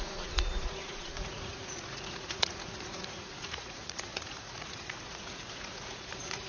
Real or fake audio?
fake